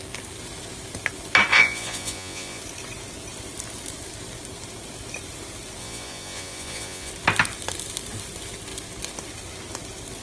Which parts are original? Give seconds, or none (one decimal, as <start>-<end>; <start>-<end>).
0.0-1.5; 2.6-5.8; 7.1-10.2